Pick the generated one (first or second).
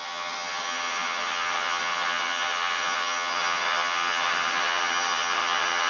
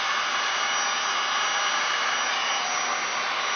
first